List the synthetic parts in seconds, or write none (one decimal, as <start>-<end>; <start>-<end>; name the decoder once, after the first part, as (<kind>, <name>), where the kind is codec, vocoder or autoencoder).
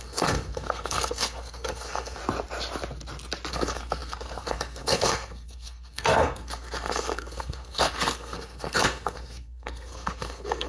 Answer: 0.0-2.2 (codec, SNAC); 3.5-10.7